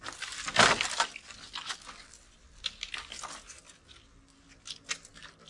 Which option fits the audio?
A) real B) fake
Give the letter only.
A